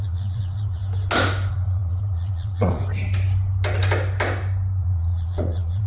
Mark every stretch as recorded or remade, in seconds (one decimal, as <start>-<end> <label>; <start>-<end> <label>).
0.0-0.8 remade; 0.8-1.5 recorded; 1.5-2.8 remade; 2.8-4.8 recorded; 4.8-5.9 remade